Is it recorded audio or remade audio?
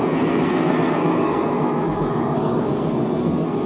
remade